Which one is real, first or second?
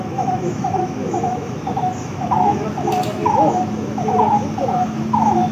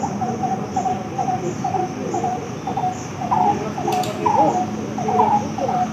second